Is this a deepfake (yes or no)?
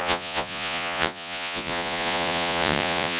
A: yes